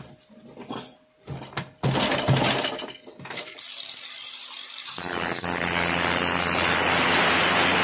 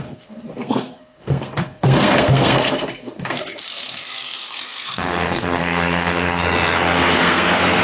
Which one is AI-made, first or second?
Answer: second